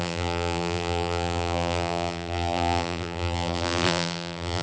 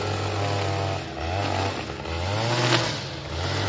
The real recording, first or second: second